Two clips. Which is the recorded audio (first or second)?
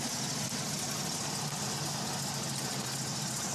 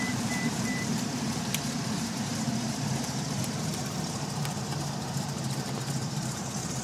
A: first